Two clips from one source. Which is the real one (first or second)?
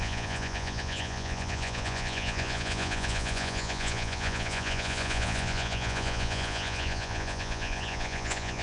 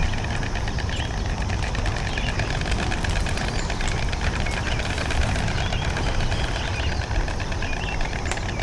second